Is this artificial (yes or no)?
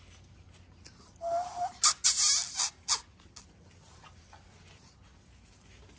no